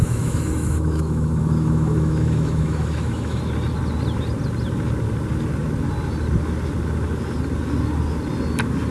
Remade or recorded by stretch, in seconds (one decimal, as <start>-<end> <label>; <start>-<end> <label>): 0.0-3.4 remade; 3.4-8.9 recorded